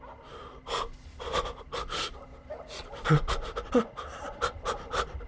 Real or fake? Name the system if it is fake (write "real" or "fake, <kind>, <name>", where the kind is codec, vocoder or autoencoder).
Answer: real